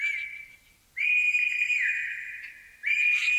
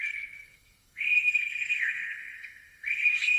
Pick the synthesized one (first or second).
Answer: second